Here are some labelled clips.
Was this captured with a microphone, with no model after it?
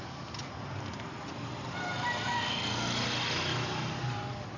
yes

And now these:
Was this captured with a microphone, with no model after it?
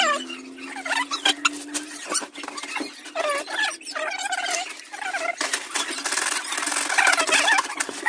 yes